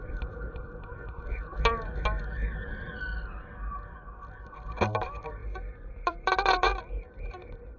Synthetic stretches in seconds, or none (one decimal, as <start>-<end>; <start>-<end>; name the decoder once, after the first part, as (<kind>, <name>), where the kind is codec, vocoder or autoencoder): 5.4-6.8 (vocoder, BigVGAN v2)